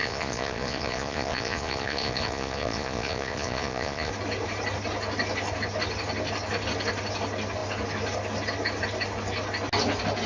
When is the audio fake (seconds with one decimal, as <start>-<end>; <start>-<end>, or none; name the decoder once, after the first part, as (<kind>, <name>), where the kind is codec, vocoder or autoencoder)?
0.0-4.1 (vocoder, Vocos)